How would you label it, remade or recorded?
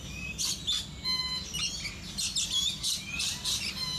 recorded